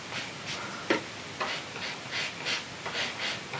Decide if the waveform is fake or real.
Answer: real